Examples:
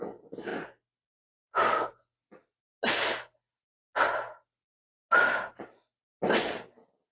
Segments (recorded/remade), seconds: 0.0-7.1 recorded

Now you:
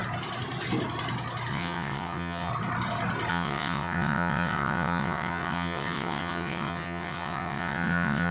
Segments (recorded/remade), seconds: 0.0-1.5 recorded; 1.5-2.5 remade; 2.5-3.3 recorded; 3.3-8.3 remade

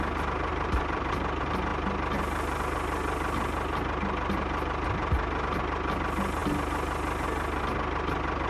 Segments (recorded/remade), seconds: 0.0-0.5 recorded; 0.5-1.1 remade; 1.1-8.5 recorded